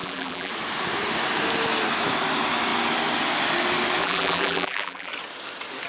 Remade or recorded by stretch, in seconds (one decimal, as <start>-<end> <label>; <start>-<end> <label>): 0.0-0.5 remade; 0.5-4.0 recorded; 4.0-5.1 remade; 5.1-5.9 recorded